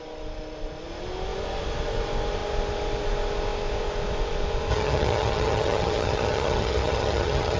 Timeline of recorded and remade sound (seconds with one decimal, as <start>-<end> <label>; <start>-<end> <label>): 0.0-4.7 recorded; 4.7-7.6 remade